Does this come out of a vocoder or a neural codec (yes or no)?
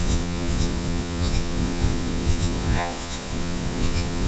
yes